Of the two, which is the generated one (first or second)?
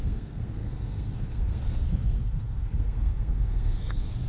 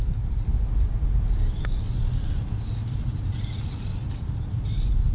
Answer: first